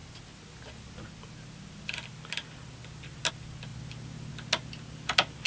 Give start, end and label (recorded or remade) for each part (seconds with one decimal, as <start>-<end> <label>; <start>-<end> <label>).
0.0-5.5 recorded